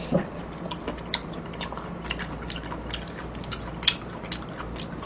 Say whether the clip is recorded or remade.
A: recorded